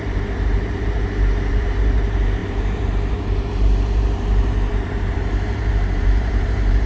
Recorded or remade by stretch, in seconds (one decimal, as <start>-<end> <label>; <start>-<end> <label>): 0.0-6.9 remade